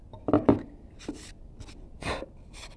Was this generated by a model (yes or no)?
no